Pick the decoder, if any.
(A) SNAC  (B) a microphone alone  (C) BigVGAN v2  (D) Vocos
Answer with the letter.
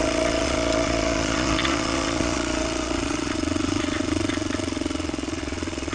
D